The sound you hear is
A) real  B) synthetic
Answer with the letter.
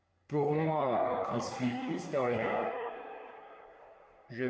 B